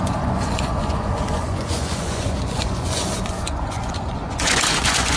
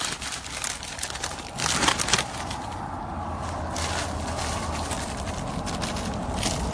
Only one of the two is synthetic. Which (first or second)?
first